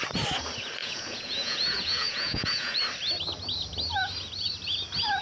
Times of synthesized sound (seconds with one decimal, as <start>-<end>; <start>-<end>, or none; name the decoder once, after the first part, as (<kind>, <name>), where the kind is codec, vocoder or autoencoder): 0.8-2.8 (vocoder, Vocos)